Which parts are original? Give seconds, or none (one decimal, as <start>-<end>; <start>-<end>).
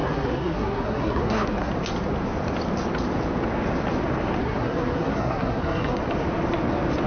1.7-4.4; 6.0-7.1